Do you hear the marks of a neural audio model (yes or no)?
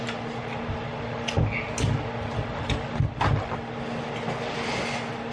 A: no